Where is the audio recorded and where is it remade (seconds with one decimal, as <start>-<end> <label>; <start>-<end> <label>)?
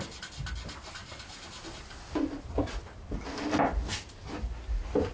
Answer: 0.0-5.1 recorded